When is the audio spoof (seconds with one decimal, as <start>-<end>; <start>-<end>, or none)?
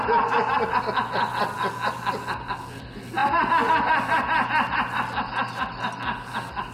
none